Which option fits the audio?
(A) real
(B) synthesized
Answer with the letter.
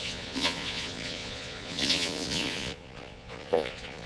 B